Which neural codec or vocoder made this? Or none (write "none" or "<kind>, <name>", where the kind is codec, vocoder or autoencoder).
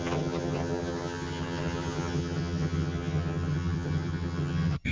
vocoder, HiFi-GAN